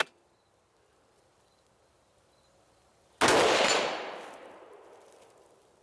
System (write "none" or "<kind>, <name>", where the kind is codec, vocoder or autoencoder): none